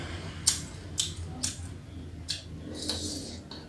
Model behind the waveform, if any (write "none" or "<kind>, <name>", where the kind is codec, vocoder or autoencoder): none